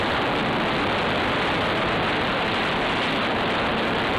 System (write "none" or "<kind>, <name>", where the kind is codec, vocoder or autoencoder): none